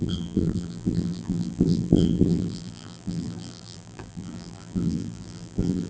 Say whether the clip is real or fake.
fake